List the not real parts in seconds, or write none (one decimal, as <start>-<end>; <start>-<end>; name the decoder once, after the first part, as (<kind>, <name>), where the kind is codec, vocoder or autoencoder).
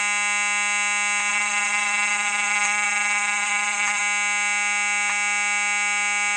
1.3-4.0 (vocoder, Vocos)